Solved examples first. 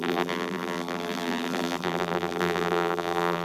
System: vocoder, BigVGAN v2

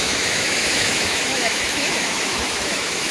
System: autoencoder, DAC-VAE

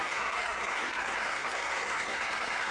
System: codec, SNAC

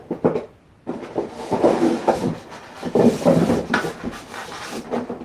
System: none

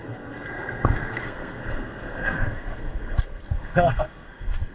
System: codec, SNAC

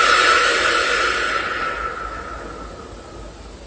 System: none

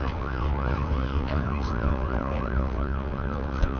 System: vocoder, WaveNeXt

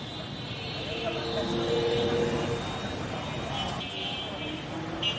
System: none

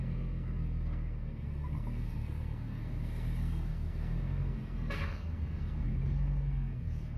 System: codec, SNAC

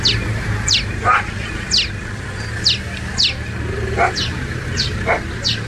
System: none